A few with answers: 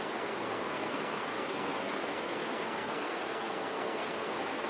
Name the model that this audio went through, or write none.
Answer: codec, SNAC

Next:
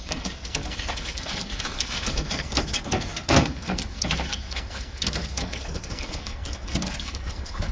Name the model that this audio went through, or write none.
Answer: codec, SNAC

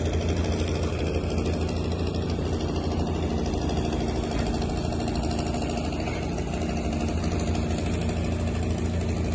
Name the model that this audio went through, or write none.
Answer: none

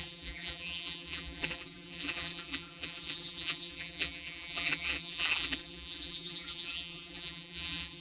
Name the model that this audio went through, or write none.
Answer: vocoder, BigVGAN v2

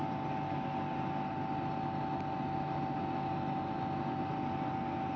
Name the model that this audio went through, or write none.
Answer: none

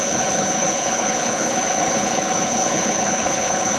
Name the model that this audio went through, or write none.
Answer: codec, HILCodec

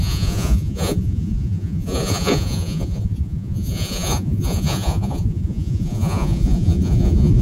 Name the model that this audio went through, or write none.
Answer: vocoder, Vocos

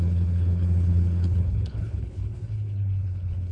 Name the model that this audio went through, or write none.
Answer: codec, HILCodec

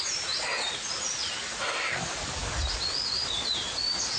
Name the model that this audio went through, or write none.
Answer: none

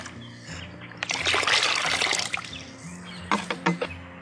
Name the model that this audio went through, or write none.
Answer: none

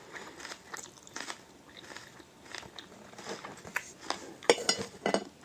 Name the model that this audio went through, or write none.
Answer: none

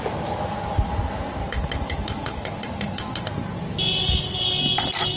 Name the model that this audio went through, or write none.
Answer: none